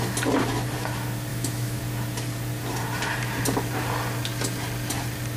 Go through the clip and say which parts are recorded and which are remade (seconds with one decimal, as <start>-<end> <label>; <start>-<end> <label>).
0.0-1.3 recorded; 1.3-1.8 remade; 1.8-5.4 recorded